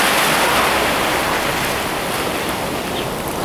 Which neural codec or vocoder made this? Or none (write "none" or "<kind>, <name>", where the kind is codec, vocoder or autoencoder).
none